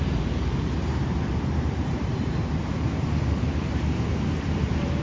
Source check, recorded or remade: remade